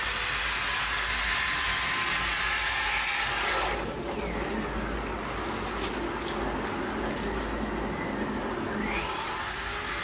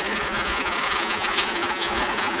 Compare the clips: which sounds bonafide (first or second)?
first